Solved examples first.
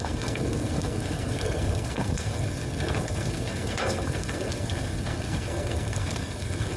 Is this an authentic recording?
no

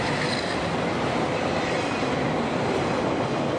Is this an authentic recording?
yes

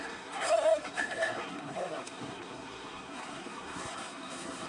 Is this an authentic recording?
no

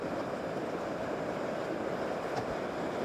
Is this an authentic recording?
yes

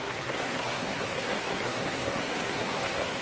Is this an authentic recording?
no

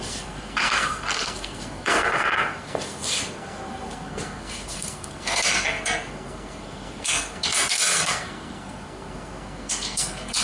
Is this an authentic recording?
no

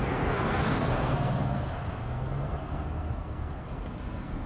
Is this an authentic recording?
no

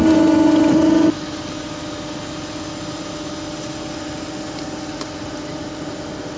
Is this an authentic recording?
yes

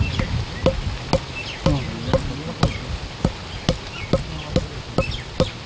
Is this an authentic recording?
yes